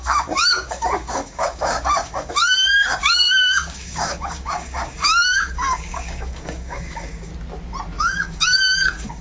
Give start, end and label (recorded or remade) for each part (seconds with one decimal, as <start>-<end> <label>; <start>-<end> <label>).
0.0-7.3 remade; 7.3-8.0 recorded; 8.0-9.2 remade